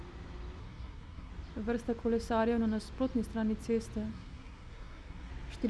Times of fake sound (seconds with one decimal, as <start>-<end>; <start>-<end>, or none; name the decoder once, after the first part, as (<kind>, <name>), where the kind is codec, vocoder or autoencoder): 0.6-1.3 (codec, SNAC); 4.1-5.3

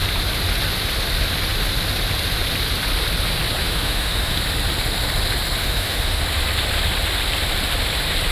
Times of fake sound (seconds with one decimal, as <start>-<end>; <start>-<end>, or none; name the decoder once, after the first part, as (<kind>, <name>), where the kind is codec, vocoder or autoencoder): 3.6-4.4 (autoencoder, DAC-VAE); 5.6-6.2

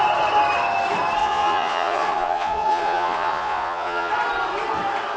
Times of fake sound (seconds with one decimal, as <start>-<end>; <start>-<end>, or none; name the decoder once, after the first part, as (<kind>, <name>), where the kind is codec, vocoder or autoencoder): 1.2-4.1 (vocoder, Vocos)

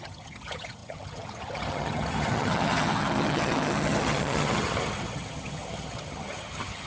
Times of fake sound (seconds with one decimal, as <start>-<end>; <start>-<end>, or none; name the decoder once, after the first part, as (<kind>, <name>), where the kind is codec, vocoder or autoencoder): 0.0-6.9 (vocoder, HiFi-GAN)

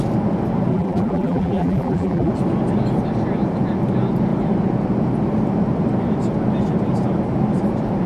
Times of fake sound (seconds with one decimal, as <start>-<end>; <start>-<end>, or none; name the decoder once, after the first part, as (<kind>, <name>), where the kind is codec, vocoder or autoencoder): 0.7-2.3 (vocoder, BigVGAN v2)

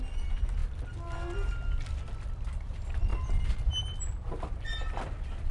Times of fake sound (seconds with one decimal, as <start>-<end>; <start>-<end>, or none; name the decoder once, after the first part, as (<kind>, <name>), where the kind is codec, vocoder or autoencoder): none

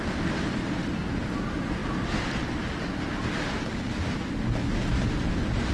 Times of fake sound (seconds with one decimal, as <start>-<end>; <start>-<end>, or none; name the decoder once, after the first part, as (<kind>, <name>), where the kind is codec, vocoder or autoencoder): none

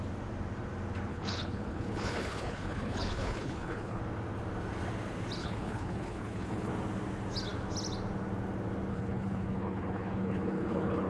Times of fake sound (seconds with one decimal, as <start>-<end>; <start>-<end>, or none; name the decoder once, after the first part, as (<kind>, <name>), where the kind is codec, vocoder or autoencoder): 1.1-4.0 (codec, HILCodec); 5.4-6.7; 8.9-11.1